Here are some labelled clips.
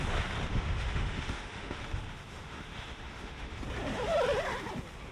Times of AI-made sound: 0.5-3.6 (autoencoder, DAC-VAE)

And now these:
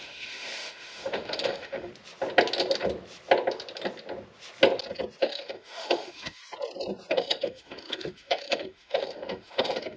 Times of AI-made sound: 0.0-1.9 (autoencoder, DAC-VAE); 5.2-6.4; 7.1-10.0

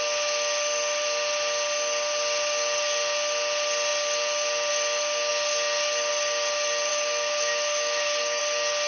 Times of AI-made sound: 6.9-8.4 (autoencoder, DAC-VAE)